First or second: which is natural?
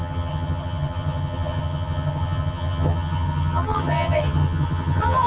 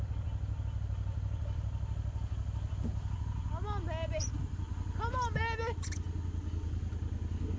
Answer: second